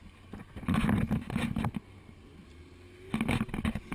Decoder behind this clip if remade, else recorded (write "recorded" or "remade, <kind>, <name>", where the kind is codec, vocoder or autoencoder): recorded